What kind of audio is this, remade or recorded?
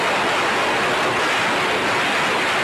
recorded